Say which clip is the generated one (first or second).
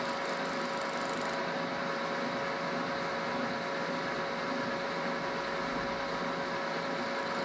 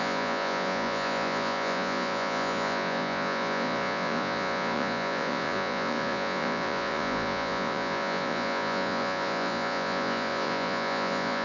second